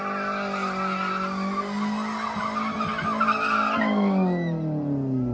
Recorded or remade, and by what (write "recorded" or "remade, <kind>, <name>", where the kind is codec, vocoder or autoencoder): recorded